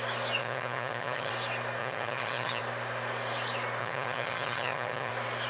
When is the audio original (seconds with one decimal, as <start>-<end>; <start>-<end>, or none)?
0.0-0.4; 1.3-1.8; 2.6-3.8; 5.1-5.5